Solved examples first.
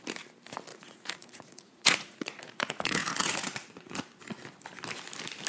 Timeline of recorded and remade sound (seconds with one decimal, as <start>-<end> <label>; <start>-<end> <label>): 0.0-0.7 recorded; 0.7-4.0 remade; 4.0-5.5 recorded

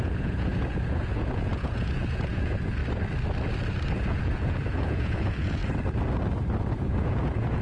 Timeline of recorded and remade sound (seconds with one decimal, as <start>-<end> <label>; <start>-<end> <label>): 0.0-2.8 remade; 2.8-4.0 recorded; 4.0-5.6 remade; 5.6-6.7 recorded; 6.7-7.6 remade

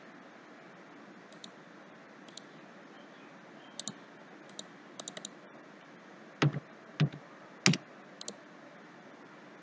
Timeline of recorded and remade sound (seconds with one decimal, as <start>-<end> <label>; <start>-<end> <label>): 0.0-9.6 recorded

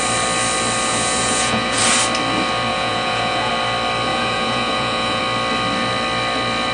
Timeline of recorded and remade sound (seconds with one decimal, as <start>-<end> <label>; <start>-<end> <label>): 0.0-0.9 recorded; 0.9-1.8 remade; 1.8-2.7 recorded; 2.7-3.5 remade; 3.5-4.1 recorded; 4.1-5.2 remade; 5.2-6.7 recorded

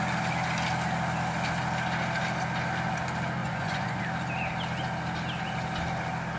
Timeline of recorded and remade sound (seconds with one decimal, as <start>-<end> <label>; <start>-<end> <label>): 0.0-3.4 recorded; 3.4-4.0 remade; 4.0-6.4 recorded

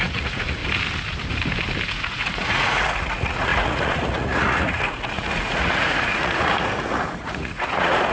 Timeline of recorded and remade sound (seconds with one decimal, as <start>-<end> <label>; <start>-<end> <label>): 0.0-0.6 remade; 0.6-1.9 recorded; 1.9-8.1 remade